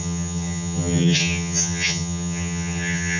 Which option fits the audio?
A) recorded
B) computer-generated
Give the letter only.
B